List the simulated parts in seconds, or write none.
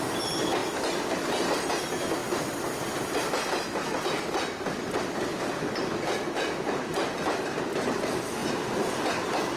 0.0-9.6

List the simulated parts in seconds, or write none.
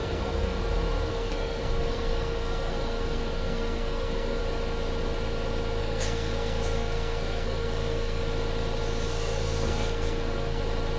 0.0-0.6; 1.1-4.4; 5.8-8.2; 9.1-10.6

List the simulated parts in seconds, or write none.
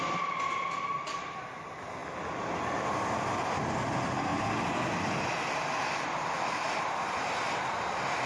none